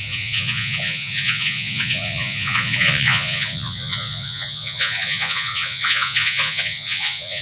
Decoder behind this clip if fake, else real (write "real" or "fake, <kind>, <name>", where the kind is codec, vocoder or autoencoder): fake, vocoder, Vocos